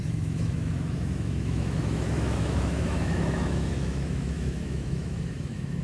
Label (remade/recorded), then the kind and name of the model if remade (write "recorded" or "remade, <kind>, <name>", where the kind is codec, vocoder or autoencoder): remade, autoencoder, DAC-VAE